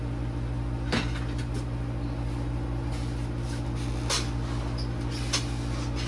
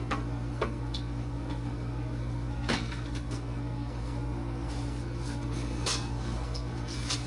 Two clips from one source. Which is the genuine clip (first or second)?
first